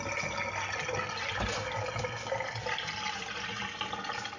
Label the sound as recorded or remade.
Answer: recorded